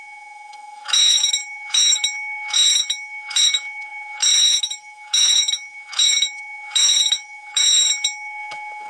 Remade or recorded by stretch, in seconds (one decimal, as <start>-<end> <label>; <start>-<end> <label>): 0.0-8.9 remade